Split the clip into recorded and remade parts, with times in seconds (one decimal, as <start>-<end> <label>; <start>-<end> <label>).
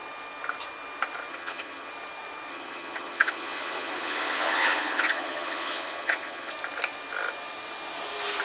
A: 0.0-1.3 recorded; 1.3-1.9 remade; 1.9-2.5 recorded; 2.5-6.5 remade; 6.5-8.4 recorded